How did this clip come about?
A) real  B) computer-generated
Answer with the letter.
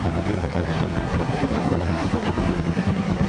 B